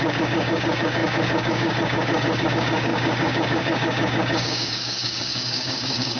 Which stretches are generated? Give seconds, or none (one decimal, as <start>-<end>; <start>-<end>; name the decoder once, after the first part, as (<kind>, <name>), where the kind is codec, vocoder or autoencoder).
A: 0.0-6.2 (codec, DAC)